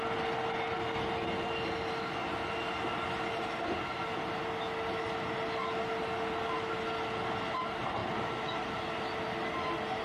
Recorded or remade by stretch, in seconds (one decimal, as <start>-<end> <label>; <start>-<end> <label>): 0.0-8.0 recorded; 8.0-8.8 remade; 8.8-10.0 recorded